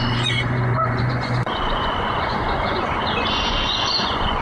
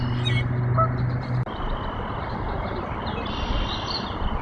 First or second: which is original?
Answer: second